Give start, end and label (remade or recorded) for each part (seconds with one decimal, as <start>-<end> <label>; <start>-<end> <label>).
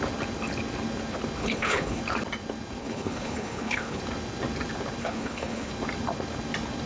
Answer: 0.0-1.4 recorded; 1.4-2.0 remade; 2.0-2.8 recorded; 2.8-4.0 remade; 4.0-5.0 recorded; 5.0-5.7 remade; 5.7-6.9 recorded